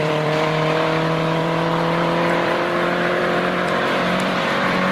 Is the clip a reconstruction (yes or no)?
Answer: yes